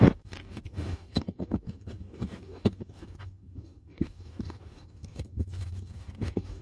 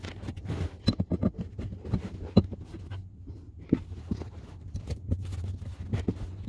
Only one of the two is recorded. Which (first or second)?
second